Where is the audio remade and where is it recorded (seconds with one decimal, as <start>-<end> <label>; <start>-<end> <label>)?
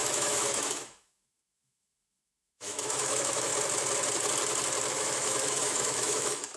0.0-3.5 remade; 3.5-4.9 recorded; 4.9-6.6 remade